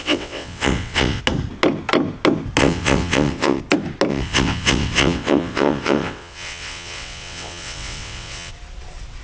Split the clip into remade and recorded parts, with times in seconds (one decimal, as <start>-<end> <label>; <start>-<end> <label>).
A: 0.0-1.2 remade; 1.2-2.6 recorded; 2.6-3.6 remade; 3.6-4.1 recorded; 4.1-8.5 remade; 8.5-9.2 recorded

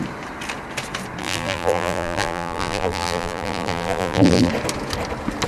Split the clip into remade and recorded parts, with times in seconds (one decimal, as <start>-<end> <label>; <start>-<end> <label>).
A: 0.0-1.2 recorded; 1.2-4.5 remade; 4.5-5.5 recorded

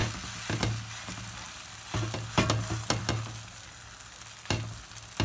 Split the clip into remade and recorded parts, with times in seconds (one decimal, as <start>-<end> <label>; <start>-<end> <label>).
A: 0.0-5.2 recorded